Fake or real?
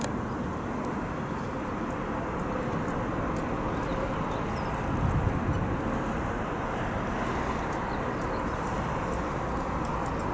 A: real